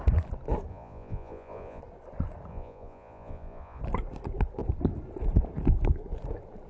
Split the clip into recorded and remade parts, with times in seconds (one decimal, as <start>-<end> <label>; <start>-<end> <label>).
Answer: 0.0-0.7 recorded; 0.7-1.8 remade; 1.8-2.5 recorded; 2.5-3.8 remade; 3.8-6.7 recorded